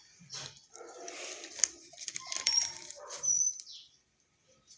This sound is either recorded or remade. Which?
remade